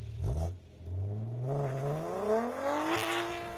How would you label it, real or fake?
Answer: real